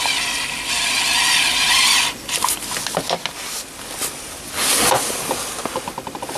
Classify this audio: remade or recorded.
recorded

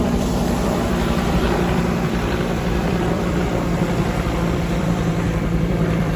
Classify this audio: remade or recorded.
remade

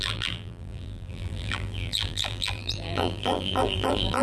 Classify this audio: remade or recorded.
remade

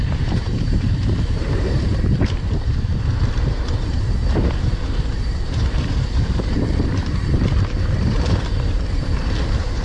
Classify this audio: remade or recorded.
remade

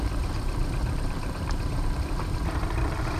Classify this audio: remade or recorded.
remade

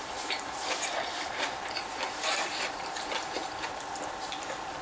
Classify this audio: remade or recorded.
remade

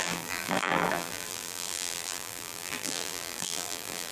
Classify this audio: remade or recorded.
remade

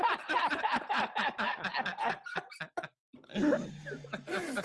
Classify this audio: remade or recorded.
remade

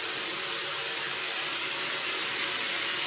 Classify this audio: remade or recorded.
remade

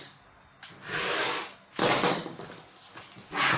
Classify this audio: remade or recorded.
recorded